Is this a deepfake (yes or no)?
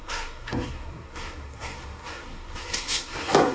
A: yes